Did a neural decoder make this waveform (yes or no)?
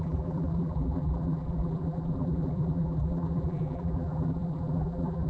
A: yes